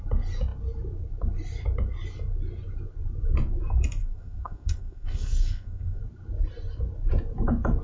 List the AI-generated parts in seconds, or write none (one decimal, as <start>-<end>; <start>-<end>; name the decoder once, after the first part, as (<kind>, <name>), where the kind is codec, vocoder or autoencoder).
4.0-6.0 (codec, SNAC)